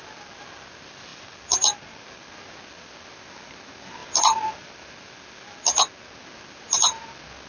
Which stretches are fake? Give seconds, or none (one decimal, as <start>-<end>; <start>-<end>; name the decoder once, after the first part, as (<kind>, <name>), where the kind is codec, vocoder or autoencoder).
1.1-2.3 (vocoder, BigVGAN v2); 4.0-4.7